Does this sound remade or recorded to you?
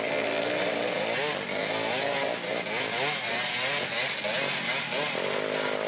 recorded